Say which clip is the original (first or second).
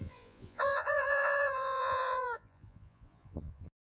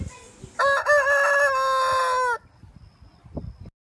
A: second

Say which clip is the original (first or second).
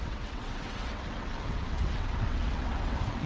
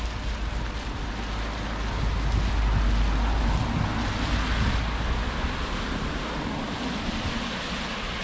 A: second